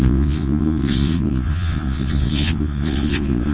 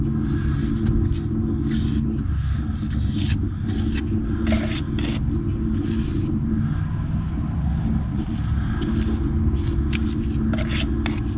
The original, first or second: second